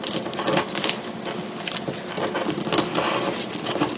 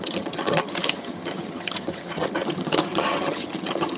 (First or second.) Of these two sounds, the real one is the first